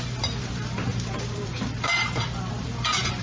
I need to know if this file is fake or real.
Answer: fake